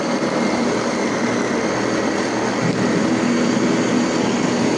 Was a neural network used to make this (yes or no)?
no